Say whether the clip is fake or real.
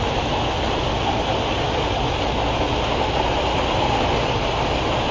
real